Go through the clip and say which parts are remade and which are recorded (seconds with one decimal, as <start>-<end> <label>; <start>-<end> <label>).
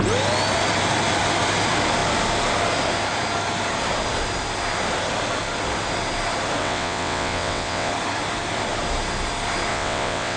0.0-6.6 recorded; 6.6-7.9 remade; 7.9-9.7 recorded; 9.7-10.4 remade